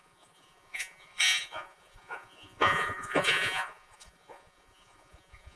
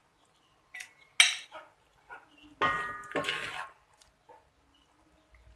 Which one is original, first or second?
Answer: second